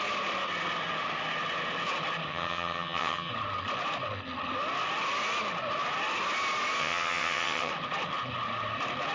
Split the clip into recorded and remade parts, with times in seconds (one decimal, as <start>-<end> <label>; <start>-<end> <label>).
0.0-2.3 recorded; 2.3-3.3 remade; 3.3-6.8 recorded; 6.8-7.7 remade; 7.7-9.1 recorded